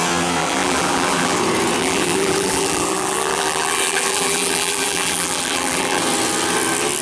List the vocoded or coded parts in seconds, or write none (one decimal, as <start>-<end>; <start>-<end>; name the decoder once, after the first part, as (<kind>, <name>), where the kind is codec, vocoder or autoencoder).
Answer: 0.4-1.4 (vocoder, BigVGAN v2); 1.8-6.0